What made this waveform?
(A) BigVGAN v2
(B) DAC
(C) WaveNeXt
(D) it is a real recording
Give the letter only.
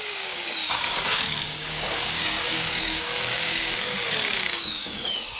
B